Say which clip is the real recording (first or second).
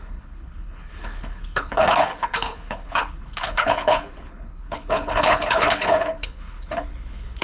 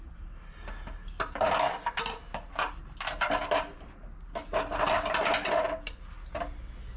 second